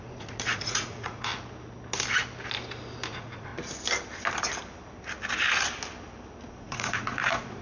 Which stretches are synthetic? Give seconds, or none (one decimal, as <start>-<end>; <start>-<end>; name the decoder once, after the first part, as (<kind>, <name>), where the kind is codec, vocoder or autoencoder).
0.0-1.3 (vocoder, Vocos); 3.1-3.5; 6.5-7.6